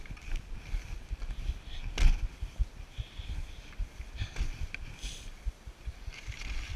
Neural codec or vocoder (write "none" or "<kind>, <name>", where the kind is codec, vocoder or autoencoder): none